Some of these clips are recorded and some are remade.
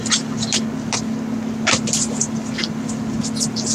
recorded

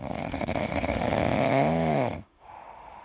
remade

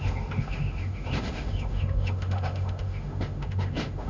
remade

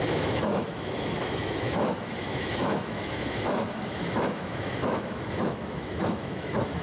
remade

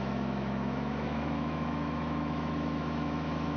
remade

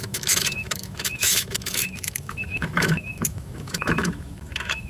remade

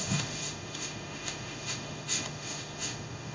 remade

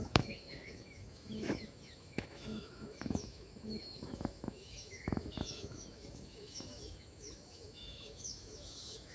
remade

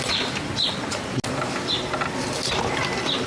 recorded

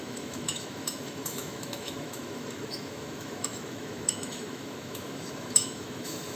remade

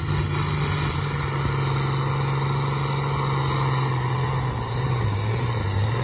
recorded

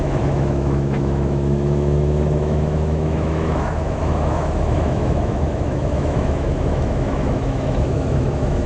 remade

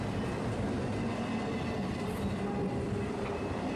recorded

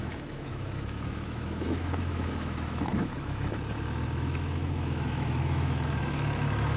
remade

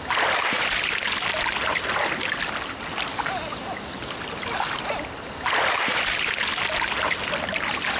recorded